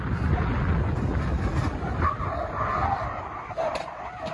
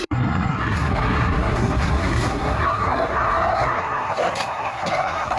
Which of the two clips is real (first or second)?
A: first